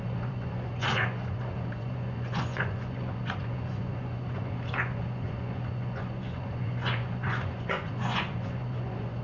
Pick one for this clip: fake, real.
fake